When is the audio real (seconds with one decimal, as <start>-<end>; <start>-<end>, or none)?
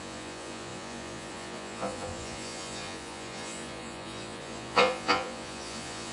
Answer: none